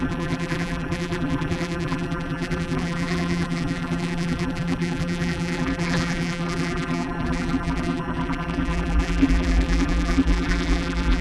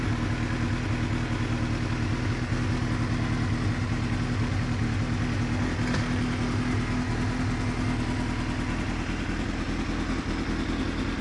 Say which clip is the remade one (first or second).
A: first